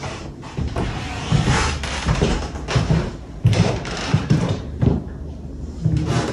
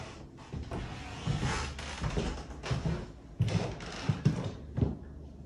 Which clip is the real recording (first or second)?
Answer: second